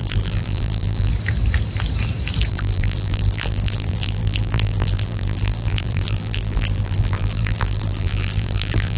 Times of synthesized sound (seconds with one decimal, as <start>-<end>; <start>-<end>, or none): 0.0-1.1; 2.5-9.0